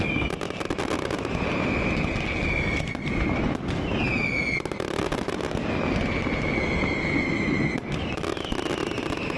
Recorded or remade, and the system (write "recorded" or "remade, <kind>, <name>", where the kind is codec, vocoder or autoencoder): recorded